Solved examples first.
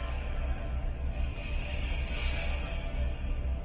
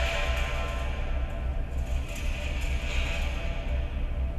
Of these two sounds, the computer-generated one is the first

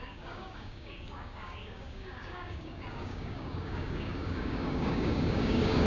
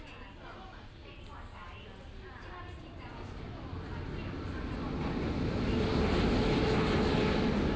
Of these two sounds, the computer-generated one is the first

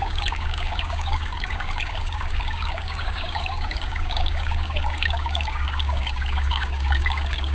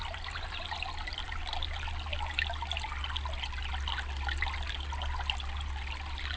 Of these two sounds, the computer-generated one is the first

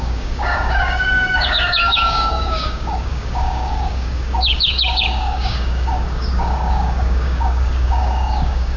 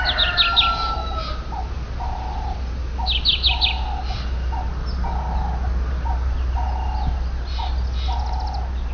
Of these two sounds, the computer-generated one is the first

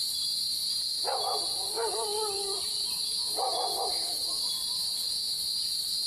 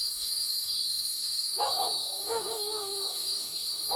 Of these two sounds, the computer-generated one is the second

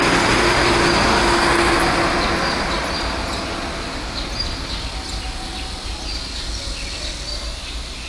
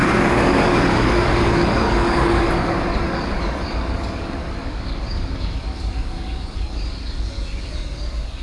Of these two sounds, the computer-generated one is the second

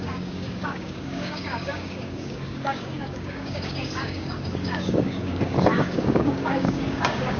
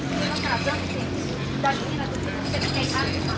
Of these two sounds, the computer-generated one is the first